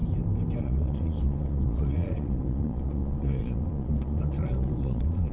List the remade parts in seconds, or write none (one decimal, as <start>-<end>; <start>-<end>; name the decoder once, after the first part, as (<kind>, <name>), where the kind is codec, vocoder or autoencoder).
0.6-5.3 (vocoder, Vocos)